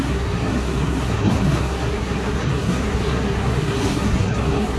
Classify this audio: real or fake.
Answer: fake